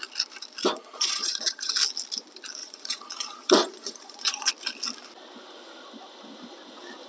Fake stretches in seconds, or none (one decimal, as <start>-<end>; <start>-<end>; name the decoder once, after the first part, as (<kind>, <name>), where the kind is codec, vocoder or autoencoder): 0.7-1.7 (vocoder, Vocos); 2.6-4.5